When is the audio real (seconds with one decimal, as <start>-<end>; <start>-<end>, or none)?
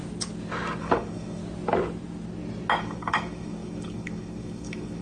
0.0-0.8; 1.4-2.8